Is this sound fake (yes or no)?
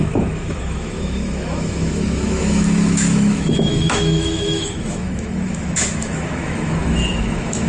yes